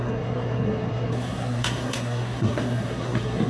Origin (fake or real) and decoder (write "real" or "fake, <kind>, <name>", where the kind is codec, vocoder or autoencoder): fake, codec, SNAC